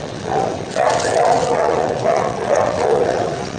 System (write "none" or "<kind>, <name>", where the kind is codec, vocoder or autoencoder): vocoder, WaveNeXt